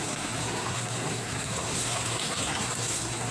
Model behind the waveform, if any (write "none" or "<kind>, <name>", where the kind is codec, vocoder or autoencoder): codec, SNAC